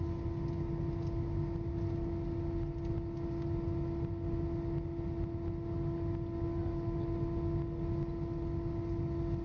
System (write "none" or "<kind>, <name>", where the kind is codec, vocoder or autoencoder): none